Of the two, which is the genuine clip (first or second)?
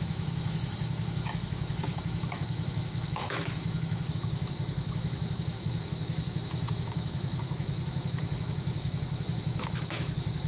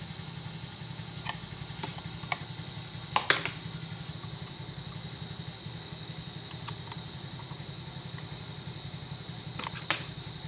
second